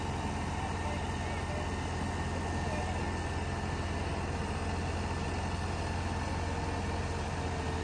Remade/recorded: recorded